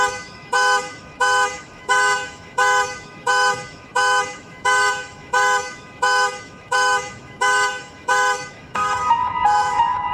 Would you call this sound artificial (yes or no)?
yes